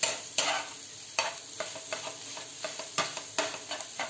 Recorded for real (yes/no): yes